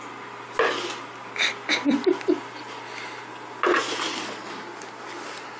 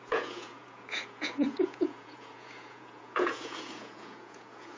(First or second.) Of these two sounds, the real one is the first